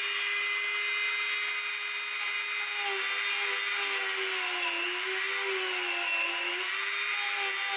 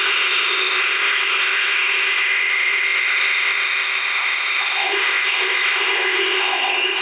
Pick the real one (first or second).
first